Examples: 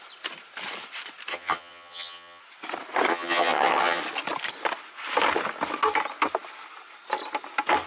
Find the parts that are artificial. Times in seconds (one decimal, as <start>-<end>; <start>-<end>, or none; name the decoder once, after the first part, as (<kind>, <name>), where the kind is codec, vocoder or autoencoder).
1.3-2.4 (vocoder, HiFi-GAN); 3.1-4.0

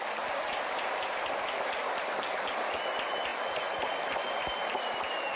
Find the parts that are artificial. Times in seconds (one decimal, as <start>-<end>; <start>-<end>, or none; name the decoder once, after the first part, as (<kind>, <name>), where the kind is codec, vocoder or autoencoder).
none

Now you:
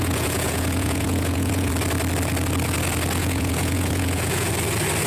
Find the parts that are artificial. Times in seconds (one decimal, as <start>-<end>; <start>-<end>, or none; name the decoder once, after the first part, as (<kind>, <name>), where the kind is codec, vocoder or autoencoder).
0.0-1.7 (vocoder, Vocos); 3.2-4.5

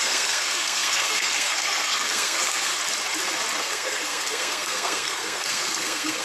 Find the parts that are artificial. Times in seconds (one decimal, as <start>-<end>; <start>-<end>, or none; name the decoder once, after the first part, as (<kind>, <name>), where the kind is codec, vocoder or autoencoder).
0.0-2.7 (codec, SNAC); 3.6-6.2

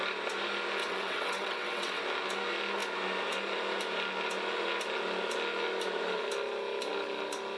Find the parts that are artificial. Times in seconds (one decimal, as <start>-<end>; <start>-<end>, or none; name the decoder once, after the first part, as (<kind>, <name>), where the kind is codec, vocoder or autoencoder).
0.8-2.0 (vocoder, WaveNeXt)

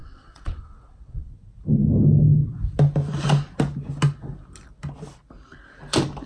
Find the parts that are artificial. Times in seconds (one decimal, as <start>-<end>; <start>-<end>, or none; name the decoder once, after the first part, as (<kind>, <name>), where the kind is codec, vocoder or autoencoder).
0.0-1.3 (vocoder, WaveNeXt)

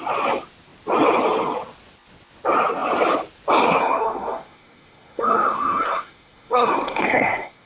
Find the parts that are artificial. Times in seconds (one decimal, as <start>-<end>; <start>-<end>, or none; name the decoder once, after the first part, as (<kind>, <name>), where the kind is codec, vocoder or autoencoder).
3.8-7.7 (codec, SNAC)